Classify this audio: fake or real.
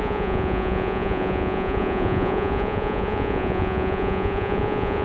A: fake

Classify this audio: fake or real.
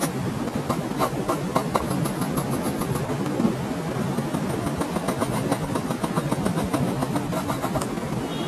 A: real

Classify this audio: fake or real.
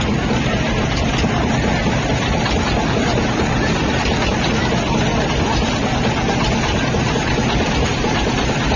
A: real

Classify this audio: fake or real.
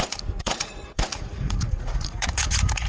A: fake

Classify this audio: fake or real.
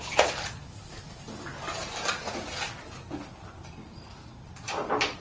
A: real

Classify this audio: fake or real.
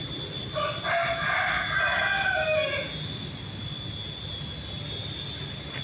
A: real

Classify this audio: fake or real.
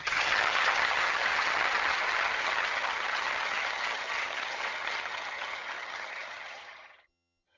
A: fake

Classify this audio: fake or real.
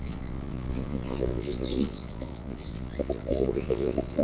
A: fake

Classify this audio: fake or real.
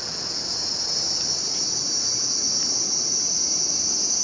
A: real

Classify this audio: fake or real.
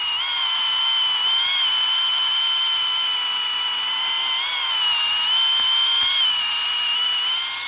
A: real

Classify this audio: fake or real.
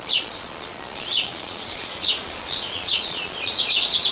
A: fake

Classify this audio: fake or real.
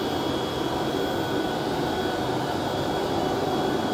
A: real